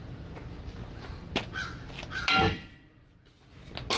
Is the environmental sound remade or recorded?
recorded